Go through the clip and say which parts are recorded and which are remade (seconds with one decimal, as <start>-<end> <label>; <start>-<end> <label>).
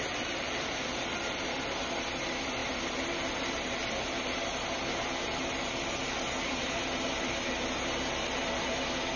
0.0-9.2 recorded